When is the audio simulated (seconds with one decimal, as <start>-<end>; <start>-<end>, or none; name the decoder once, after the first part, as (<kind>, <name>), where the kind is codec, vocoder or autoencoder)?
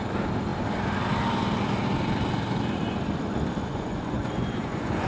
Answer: 3.7-5.1 (vocoder, Vocos)